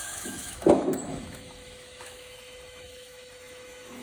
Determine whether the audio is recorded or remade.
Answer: remade